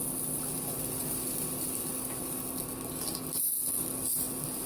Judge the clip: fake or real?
real